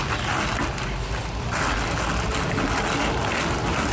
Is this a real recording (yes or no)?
yes